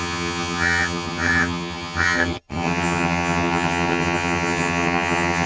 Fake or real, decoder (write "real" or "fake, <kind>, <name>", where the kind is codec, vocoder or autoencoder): fake, vocoder, HiFi-GAN